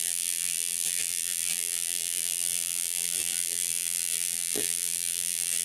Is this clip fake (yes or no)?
yes